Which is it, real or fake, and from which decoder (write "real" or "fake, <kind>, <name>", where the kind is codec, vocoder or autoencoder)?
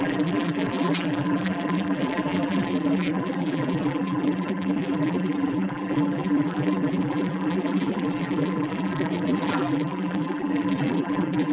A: fake, vocoder, BigVGAN v2